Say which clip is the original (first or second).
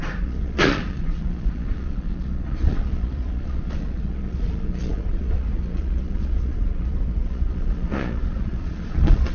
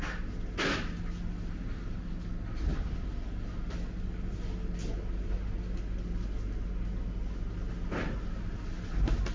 second